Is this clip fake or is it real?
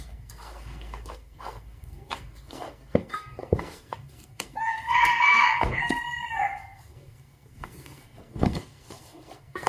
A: fake